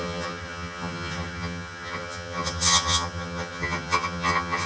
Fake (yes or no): yes